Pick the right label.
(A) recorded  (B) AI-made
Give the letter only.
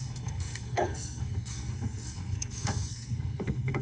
B